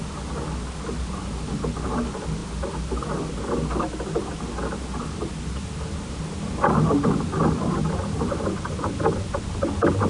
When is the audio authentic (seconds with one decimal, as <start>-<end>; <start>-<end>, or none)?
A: 0.0-10.1